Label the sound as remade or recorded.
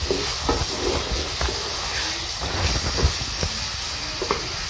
recorded